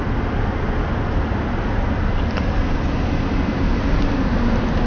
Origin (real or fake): real